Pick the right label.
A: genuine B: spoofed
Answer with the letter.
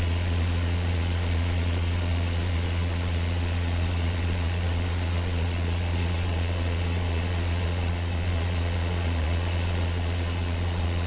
B